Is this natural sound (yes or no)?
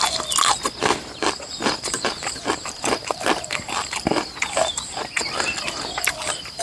yes